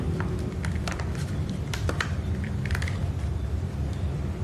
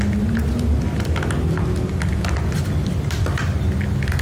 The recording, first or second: second